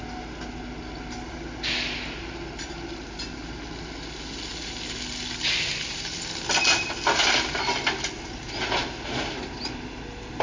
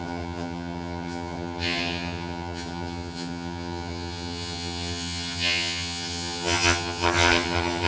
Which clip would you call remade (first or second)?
second